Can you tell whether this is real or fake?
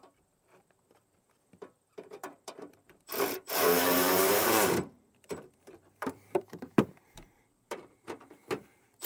fake